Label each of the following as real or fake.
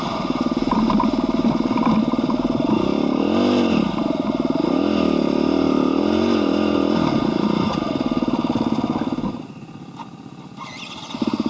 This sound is real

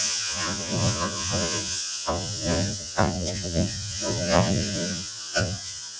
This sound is fake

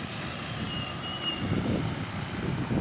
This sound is real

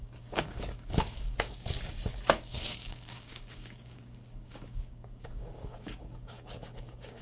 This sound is fake